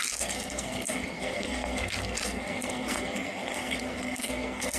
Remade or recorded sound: remade